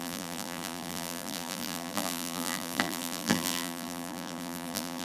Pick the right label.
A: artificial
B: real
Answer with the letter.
A